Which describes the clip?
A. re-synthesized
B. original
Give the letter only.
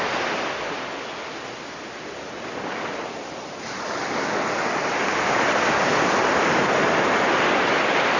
B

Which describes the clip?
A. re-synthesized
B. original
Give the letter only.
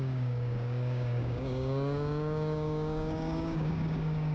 A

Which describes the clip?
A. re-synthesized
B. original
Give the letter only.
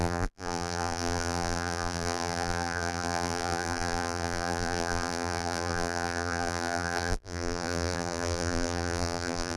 A